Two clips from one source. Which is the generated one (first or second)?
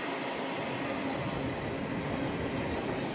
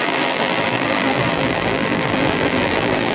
second